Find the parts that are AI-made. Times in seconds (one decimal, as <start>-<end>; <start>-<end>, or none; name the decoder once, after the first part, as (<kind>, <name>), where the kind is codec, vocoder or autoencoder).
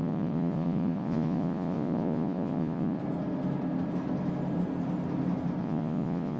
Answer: 0.0-3.0 (vocoder, Vocos); 5.6-6.4